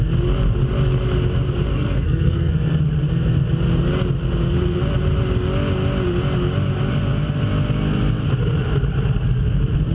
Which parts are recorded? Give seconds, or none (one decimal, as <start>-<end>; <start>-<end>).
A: 0.0-1.7; 2.5-9.9